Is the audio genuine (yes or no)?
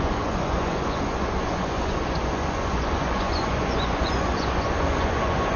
no